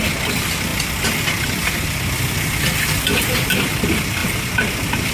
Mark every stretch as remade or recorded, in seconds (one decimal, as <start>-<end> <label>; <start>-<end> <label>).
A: 0.0-5.1 recorded